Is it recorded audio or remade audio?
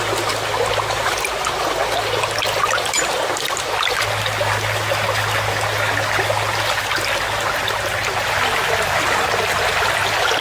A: recorded